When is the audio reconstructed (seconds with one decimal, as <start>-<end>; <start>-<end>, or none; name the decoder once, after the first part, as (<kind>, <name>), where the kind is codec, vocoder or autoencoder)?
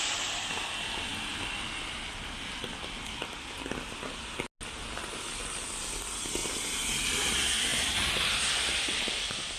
none